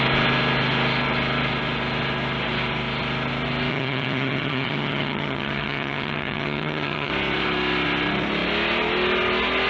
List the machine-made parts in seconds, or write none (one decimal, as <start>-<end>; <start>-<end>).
3.7-7.1